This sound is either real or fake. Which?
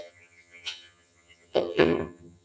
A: fake